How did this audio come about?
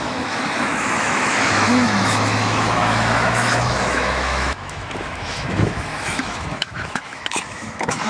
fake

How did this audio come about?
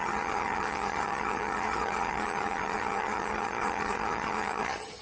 fake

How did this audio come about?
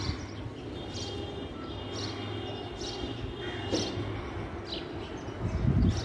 real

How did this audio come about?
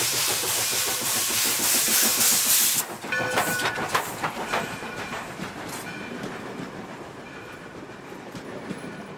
fake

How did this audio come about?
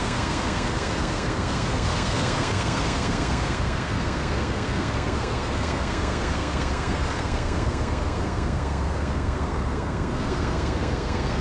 fake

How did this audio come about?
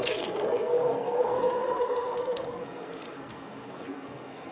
fake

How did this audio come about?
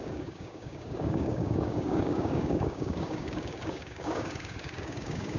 fake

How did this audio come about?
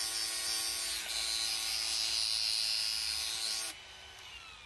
real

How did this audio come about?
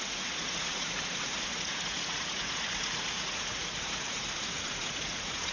fake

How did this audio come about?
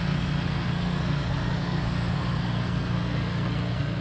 fake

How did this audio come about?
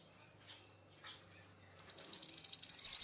real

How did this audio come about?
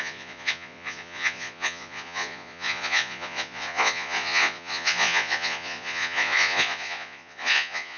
fake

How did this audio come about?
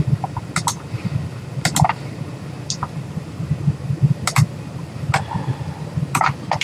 real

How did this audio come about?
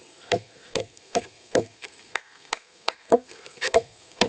fake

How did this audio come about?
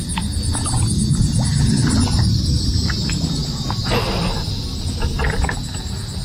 real